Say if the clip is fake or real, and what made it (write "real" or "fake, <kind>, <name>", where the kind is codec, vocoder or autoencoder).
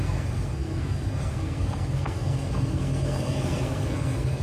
fake, codec, SNAC